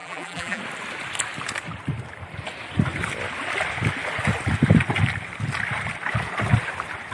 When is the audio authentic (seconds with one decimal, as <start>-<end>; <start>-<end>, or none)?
0.6-7.1